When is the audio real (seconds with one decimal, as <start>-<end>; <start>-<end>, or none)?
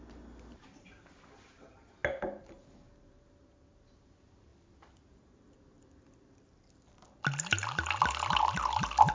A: 0.0-9.1